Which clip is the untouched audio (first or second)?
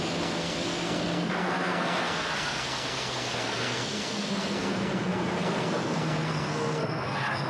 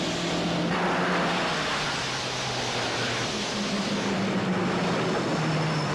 second